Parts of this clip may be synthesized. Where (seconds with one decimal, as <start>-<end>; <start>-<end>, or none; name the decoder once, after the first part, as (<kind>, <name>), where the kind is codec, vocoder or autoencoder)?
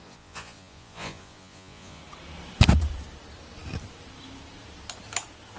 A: 0.0-2.0 (vocoder, Vocos)